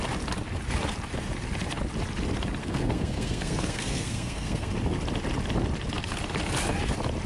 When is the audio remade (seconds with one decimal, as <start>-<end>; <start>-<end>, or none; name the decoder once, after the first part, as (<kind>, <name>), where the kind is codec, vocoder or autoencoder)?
2.6-4.7 (codec, SNAC)